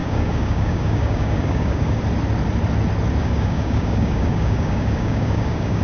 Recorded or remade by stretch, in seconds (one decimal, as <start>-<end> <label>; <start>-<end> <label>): 0.0-2.0 remade; 2.0-3.2 recorded; 3.2-5.8 remade